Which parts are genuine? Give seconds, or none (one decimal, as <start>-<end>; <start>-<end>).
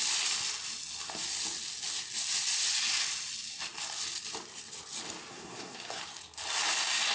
0.0-5.3; 6.0-7.1